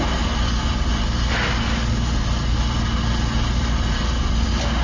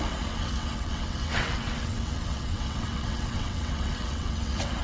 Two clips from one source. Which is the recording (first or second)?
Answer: first